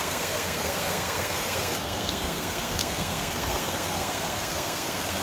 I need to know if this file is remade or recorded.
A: remade